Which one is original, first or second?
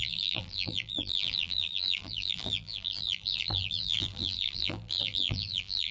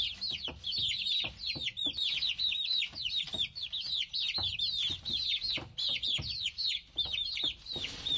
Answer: second